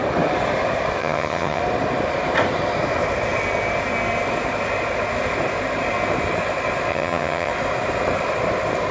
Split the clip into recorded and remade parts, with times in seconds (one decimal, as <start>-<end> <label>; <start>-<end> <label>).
0.0-1.0 recorded; 1.0-1.6 remade; 1.6-6.9 recorded; 6.9-7.5 remade; 7.5-8.9 recorded